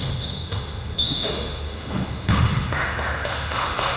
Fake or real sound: fake